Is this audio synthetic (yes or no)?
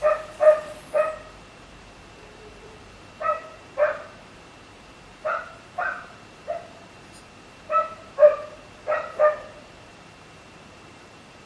yes